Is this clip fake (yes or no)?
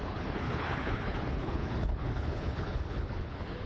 yes